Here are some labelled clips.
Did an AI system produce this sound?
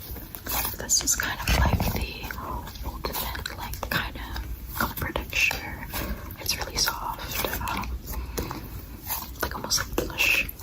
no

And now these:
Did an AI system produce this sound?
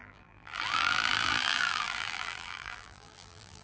yes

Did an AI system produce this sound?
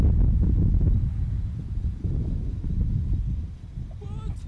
no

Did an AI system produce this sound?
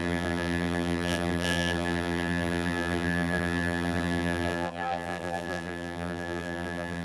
yes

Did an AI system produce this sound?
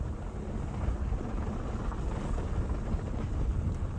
no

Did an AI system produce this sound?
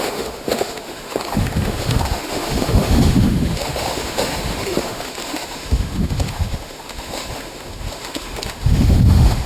yes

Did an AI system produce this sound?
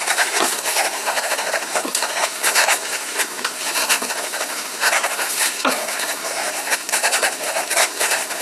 yes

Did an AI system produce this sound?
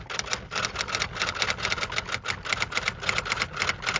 no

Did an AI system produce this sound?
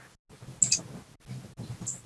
no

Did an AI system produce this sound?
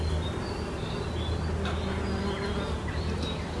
no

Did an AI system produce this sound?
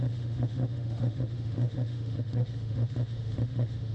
yes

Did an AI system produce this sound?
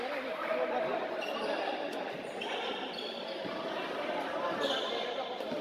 no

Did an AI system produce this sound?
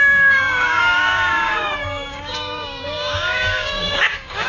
yes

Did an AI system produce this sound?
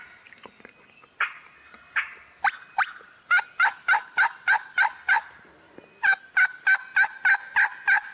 no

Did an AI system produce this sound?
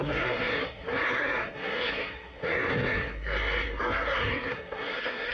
yes